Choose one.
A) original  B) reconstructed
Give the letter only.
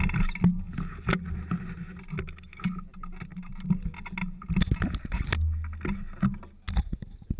A